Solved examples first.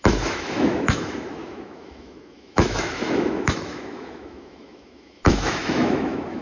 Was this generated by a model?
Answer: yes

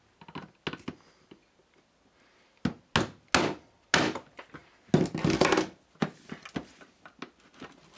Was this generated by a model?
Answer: no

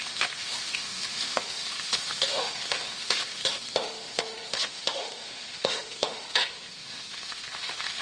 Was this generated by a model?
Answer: yes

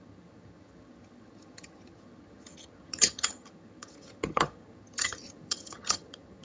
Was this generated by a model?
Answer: yes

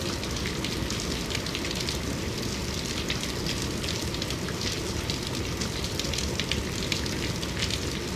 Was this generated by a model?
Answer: no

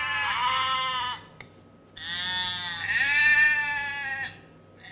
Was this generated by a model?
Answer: no